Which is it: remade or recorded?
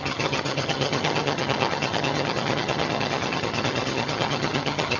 remade